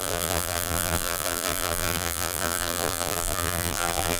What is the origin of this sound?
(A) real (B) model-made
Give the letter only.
B